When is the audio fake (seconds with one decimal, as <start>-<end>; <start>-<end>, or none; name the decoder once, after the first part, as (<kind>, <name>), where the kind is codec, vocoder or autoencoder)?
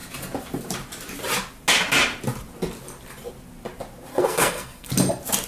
4.1-4.9 (codec, SNAC)